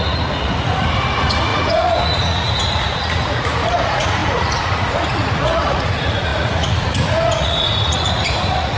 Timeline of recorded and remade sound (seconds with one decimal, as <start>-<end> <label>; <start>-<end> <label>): 0.0-8.8 remade